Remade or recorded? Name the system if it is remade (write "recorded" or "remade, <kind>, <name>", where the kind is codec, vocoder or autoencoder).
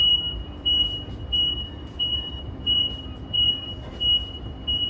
remade, vocoder, BigVGAN v2